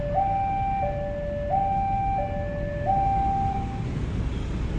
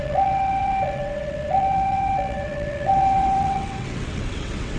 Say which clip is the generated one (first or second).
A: second